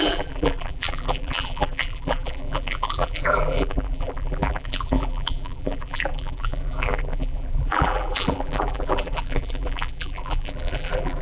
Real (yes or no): no